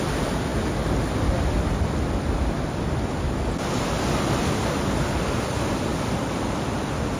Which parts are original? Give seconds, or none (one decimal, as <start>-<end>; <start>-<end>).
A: 0.0-7.2